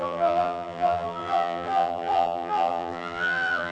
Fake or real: fake